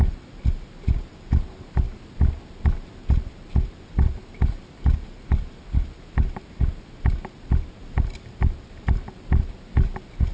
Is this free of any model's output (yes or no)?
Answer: yes